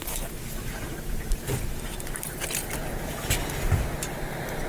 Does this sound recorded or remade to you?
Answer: recorded